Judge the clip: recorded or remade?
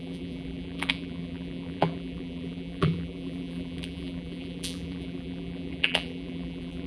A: remade